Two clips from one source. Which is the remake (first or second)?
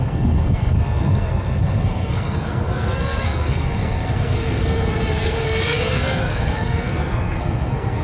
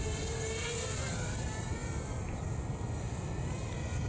first